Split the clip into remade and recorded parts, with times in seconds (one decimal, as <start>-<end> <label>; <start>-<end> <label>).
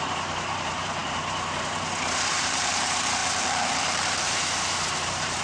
0.0-5.4 remade